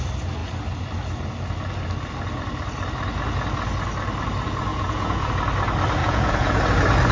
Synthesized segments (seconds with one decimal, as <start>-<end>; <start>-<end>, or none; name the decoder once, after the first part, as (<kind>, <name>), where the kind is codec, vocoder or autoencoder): 4.7-5.3 (vocoder, Vocos); 6.0-6.6